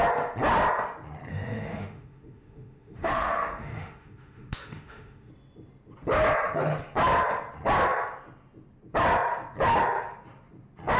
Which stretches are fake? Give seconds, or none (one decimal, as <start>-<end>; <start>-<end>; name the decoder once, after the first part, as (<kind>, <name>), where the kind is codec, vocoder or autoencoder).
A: 1.3-5.3 (autoencoder, DAC-VAE)